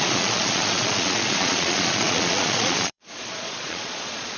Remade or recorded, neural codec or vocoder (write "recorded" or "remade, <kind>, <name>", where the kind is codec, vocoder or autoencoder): remade, vocoder, Vocos